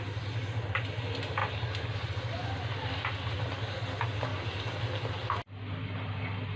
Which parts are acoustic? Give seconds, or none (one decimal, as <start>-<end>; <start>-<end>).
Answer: 0.0-4.3; 4.8-6.6